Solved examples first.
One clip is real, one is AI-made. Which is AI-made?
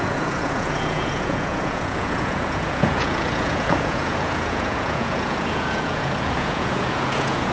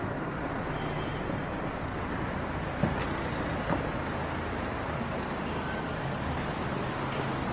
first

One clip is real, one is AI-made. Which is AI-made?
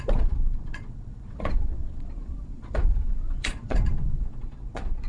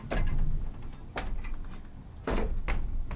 first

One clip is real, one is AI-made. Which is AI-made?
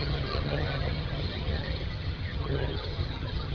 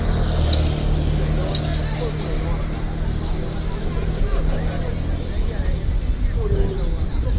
first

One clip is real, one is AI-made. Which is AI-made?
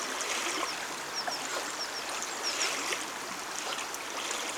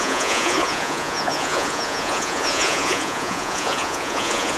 second